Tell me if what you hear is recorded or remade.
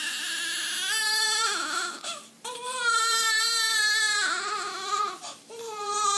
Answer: remade